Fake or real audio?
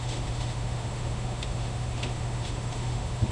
fake